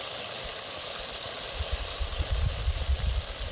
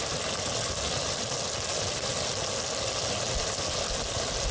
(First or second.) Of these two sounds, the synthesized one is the first